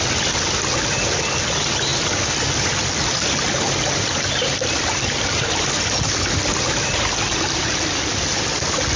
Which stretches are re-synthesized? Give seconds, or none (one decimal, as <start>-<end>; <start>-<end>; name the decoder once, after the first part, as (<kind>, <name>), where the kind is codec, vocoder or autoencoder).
none